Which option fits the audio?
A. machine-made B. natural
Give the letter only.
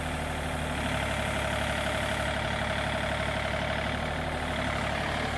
B